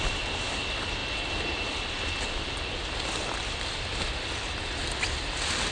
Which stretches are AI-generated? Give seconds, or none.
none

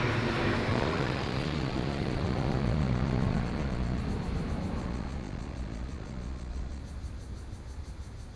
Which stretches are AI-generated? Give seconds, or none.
0.7-4.0 (vocoder, Vocos); 4.8-6.8